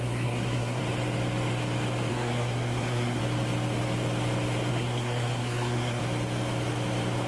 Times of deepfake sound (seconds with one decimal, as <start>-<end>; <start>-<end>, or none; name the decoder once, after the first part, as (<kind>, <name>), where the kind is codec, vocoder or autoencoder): 0.0-0.8 (codec, SNAC); 2.1-3.2; 4.7-6.0